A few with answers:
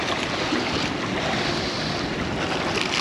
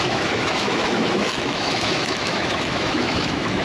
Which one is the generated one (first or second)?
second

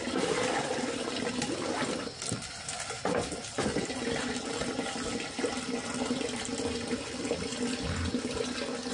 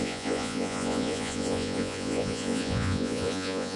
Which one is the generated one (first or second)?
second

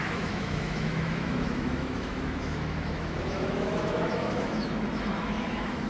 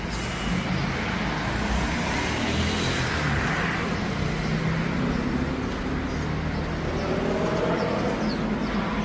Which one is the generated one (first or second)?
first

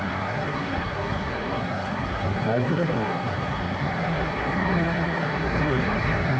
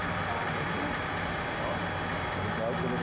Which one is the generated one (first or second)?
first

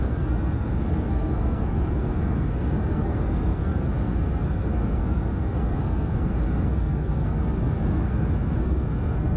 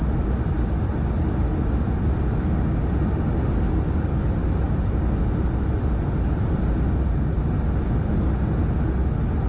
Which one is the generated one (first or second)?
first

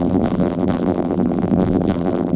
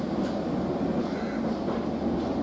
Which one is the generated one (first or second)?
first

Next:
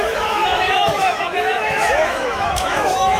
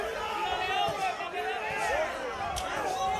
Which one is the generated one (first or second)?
first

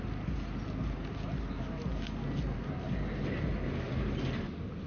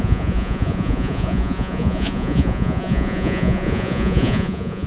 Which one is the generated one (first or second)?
second